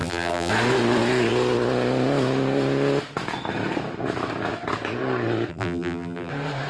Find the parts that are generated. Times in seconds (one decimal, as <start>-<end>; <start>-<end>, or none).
0.0-0.5; 5.5-6.3